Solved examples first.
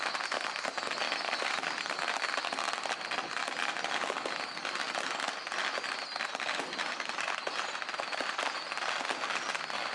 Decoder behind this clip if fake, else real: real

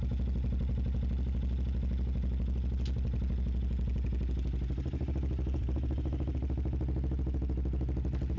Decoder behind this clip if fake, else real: real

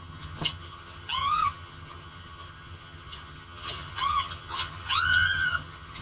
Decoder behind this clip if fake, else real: fake, vocoder, HiFi-GAN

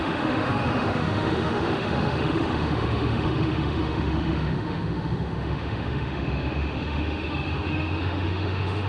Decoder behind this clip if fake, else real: fake, autoencoder, DAC-VAE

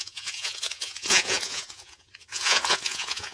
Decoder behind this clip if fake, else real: fake, vocoder, Vocos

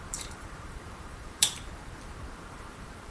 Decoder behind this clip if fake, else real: fake, vocoder, BigVGAN v2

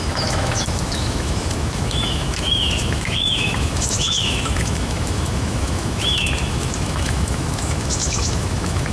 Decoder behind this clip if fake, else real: fake, autoencoder, DAC-VAE